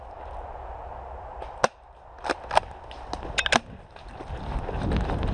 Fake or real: real